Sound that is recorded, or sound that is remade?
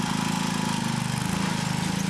recorded